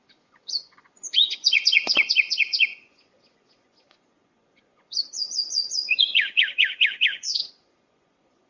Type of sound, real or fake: fake